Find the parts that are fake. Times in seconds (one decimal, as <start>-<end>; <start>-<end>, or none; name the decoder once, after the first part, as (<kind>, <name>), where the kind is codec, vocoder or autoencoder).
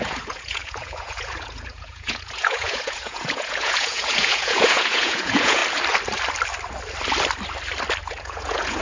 0.0-5.6 (vocoder, Vocos); 8.0-8.8